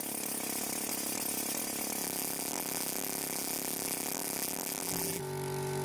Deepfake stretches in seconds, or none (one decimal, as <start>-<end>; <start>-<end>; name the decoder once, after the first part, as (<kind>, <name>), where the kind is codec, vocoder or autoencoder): 2.0-5.2 (vocoder, BigVGAN v2)